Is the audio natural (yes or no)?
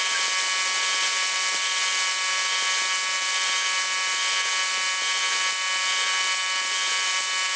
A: yes